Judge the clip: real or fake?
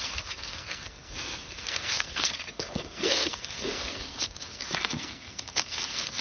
fake